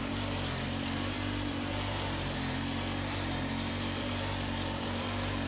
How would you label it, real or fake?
fake